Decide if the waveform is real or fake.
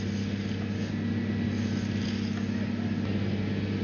real